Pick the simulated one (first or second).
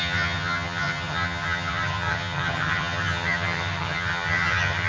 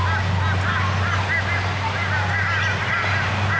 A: first